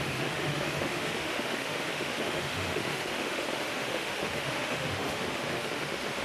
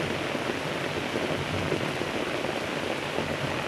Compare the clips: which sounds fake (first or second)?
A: first